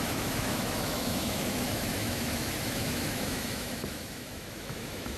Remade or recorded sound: remade